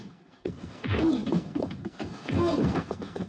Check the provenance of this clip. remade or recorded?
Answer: remade